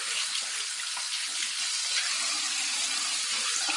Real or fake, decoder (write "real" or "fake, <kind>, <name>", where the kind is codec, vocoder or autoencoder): real